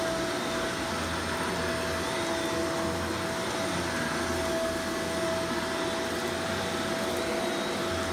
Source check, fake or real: real